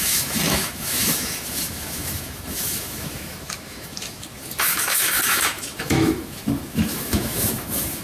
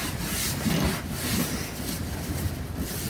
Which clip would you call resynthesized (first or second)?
first